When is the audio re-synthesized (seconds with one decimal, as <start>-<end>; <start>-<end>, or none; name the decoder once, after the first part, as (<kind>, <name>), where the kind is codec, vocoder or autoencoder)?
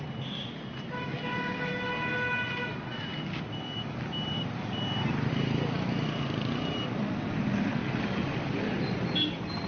none